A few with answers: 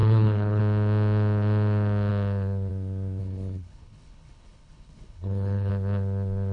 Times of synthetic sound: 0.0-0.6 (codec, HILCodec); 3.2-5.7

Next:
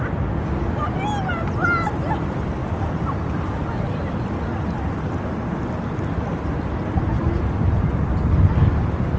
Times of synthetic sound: 2.6-3.6 (vocoder, BigVGAN v2)